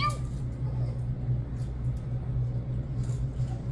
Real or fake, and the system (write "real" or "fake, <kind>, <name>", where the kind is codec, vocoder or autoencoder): real